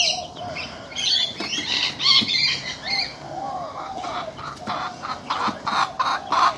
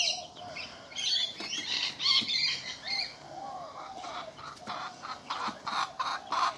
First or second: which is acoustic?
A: first